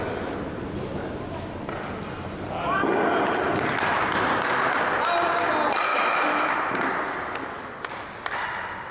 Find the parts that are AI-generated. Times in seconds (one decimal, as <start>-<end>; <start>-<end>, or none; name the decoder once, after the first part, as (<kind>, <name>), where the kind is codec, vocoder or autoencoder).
5.9-6.5 (autoencoder, DAC-VAE)